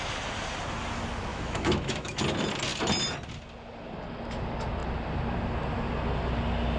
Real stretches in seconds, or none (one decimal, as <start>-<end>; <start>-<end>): 0.0-1.3; 2.2-6.8